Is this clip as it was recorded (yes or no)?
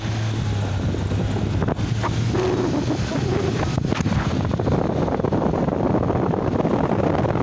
yes